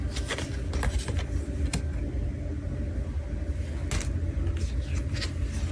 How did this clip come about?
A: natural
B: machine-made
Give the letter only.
A